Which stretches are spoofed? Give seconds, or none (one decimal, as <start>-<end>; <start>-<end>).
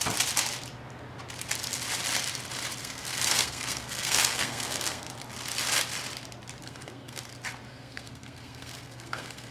2.8-5.1; 6.6-7.2; 7.7-9.5